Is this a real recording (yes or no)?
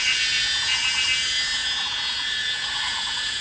no